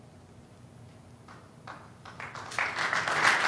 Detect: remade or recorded recorded